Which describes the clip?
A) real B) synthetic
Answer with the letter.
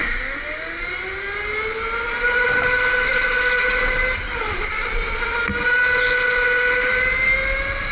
A